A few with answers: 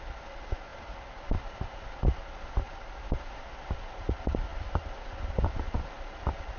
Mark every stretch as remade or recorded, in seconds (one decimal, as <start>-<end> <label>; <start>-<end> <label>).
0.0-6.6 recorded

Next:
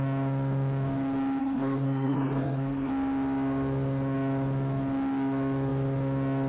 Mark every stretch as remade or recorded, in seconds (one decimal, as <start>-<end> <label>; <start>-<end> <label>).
0.0-1.4 recorded; 1.4-2.9 remade; 2.9-6.5 recorded

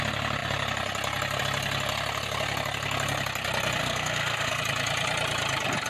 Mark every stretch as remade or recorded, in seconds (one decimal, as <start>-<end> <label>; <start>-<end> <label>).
0.0-3.8 recorded; 3.8-4.6 remade; 4.6-5.9 recorded

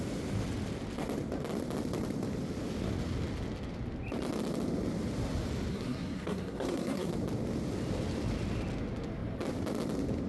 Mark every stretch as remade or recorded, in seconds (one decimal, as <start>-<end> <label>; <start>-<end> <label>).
0.0-5.7 recorded; 5.7-7.1 remade; 7.1-10.3 recorded

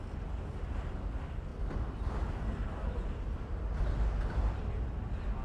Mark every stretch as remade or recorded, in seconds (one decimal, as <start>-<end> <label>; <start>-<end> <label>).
0.0-5.4 recorded

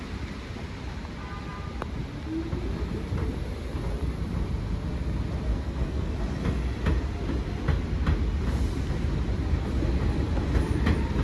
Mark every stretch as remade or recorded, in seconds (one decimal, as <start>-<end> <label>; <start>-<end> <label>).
0.0-5.5 recorded; 5.5-6.1 remade; 6.1-11.2 recorded

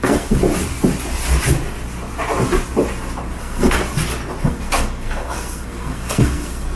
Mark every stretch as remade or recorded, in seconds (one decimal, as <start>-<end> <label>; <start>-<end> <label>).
0.0-0.4 remade; 0.4-3.4 recorded; 3.4-3.8 remade; 3.8-4.4 recorded; 4.4-6.8 remade

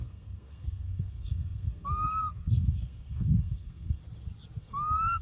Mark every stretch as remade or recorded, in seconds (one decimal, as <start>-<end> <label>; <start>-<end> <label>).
0.0-4.0 remade; 4.0-4.6 recorded; 4.6-5.2 remade